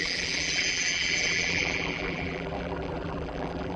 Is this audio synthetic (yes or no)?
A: yes